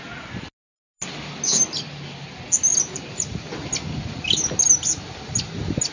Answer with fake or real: real